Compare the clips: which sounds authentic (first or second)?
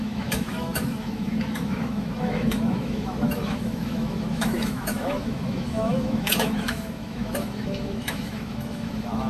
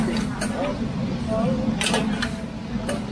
second